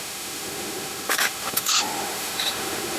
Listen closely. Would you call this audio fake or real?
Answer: fake